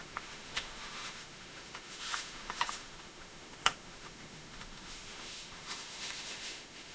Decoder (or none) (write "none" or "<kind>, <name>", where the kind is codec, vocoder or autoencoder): autoencoder, DAC-VAE